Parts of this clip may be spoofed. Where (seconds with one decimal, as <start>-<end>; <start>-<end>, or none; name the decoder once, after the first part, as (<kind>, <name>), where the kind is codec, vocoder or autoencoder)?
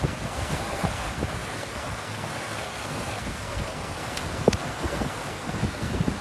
0.0-6.2 (codec, SNAC)